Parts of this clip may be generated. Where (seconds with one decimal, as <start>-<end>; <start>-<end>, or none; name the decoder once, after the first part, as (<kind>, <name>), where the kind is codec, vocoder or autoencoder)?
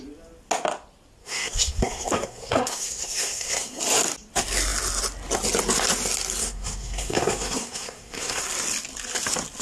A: 1.2-3.8 (codec, SNAC); 6.4-8.4